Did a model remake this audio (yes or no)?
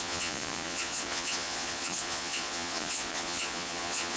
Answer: yes